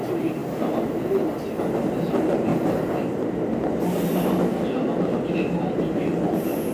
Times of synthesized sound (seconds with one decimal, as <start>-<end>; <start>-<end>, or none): 0.0-1.3; 1.8-2.5